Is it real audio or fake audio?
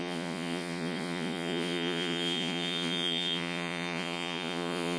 fake